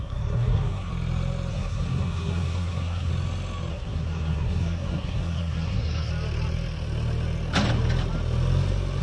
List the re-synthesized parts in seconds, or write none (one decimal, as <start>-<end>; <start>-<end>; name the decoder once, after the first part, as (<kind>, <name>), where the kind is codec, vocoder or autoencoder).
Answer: 0.0-0.9 (codec, SNAC); 1.5-3.1; 3.7-6.1

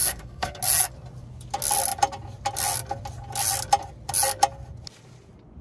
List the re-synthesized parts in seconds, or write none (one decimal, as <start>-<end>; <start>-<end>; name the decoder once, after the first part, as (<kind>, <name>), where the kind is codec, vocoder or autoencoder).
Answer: 0.0-0.6 (codec, SNAC)